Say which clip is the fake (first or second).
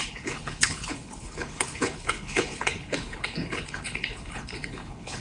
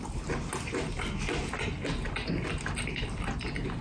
first